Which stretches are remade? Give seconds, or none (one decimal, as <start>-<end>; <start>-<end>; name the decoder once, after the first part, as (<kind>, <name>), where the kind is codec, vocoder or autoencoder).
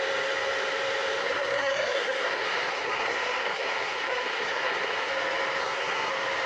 1.2-5.1 (codec, SNAC); 5.6-6.1